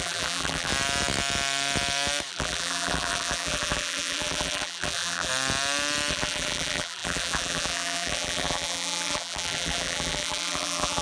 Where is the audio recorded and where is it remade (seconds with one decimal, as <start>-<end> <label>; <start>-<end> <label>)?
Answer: 0.0-0.7 remade; 0.7-2.3 recorded; 2.3-5.3 remade; 5.3-6.1 recorded; 6.1-11.0 remade